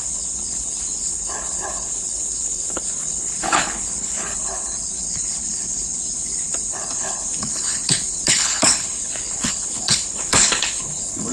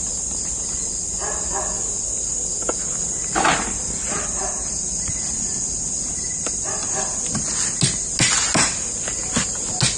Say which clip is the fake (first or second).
first